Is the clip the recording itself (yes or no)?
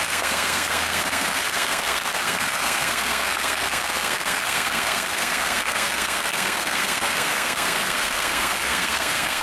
no